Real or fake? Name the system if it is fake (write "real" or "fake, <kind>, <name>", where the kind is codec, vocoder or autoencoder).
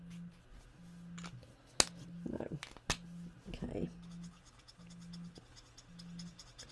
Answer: real